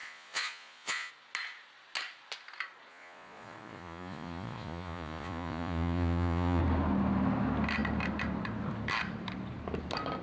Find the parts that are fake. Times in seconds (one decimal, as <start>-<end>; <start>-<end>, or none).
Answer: 0.0-1.1; 2.9-6.6